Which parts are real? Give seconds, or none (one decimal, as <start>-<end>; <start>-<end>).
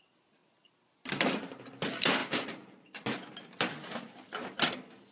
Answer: 0.0-5.1